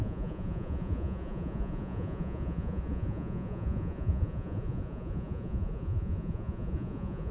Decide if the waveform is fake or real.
fake